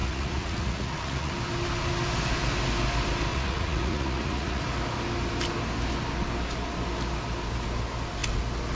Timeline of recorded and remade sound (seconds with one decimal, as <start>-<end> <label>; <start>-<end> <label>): 0.0-1.3 remade; 1.3-3.3 recorded; 3.3-4.6 remade; 4.6-8.8 recorded